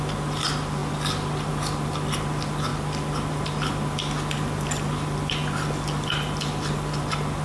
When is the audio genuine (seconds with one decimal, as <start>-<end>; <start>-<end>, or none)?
0.0-7.4